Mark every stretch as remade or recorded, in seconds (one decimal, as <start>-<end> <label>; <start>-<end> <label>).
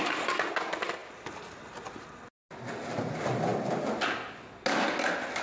0.0-5.4 recorded